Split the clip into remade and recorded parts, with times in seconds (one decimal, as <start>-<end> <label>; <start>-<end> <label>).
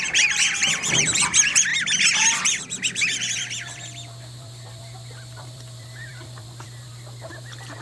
0.0-7.8 remade